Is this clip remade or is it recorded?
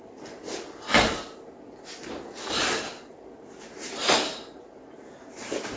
recorded